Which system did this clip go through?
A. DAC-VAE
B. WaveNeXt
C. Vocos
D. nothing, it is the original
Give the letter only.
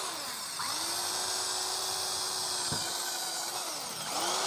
D